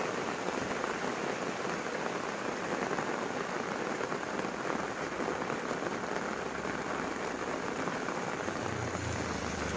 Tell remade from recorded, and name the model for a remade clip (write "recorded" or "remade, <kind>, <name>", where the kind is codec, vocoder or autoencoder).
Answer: remade, vocoder, BigVGAN v2